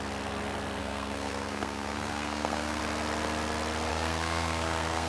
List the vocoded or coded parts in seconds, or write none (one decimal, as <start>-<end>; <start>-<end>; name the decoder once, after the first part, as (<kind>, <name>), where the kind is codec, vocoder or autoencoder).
0.8-2.8 (codec, SNAC); 3.9-5.1